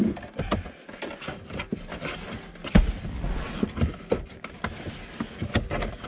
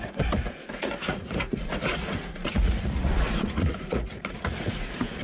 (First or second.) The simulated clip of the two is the second